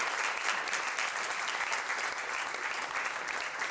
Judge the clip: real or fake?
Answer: real